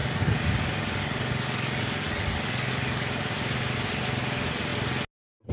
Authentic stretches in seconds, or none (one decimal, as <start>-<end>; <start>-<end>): 3.3-5.5